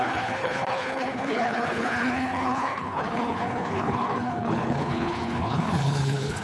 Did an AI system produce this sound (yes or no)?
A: yes